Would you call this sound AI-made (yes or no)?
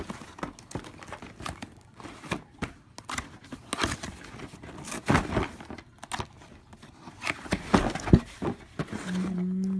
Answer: no